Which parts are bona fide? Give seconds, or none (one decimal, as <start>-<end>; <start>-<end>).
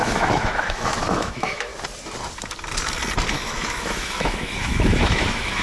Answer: 1.7-3.3